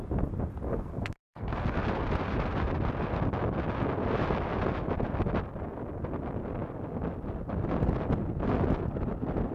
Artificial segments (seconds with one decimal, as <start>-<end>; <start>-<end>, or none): 0.7-1.8